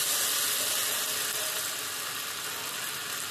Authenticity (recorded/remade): recorded